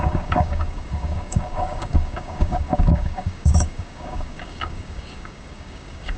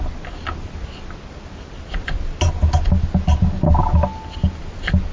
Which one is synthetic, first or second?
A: first